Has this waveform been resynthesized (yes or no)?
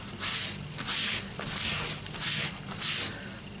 no